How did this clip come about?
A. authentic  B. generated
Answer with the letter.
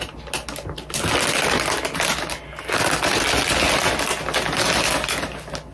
A